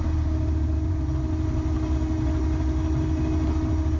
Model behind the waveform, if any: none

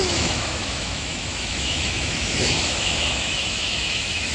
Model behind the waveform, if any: autoencoder, DAC-VAE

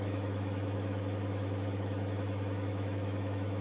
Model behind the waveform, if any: autoencoder, DAC-VAE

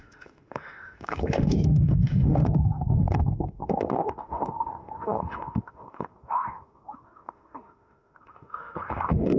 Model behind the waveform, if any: autoencoder, DAC-VAE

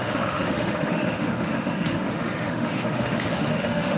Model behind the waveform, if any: autoencoder, DAC-VAE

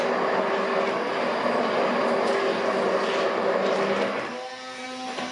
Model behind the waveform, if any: none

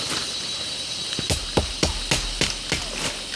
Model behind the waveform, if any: none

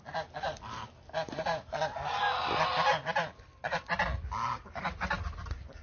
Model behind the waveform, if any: none